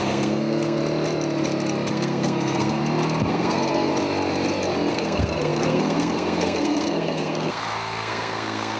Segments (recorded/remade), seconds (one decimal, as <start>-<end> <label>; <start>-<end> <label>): 0.0-0.8 remade; 0.8-1.9 recorded; 1.9-2.8 remade; 2.8-3.3 recorded; 3.3-3.9 remade; 3.9-4.9 recorded; 4.9-8.8 remade